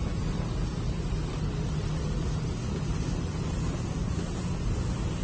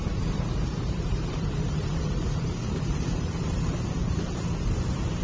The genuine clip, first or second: first